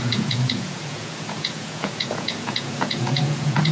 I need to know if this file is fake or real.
fake